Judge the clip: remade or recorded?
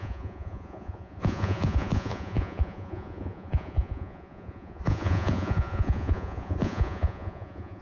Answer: remade